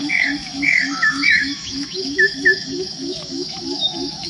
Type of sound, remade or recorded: remade